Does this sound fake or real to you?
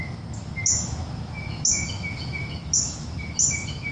fake